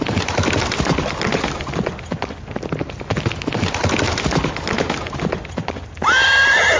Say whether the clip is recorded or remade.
recorded